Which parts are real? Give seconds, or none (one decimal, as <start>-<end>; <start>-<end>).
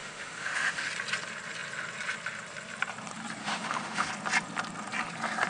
0.9-3.4; 4.1-5.5